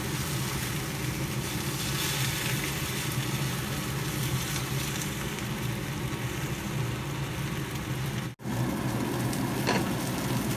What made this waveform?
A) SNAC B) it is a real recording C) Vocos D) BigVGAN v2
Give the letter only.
B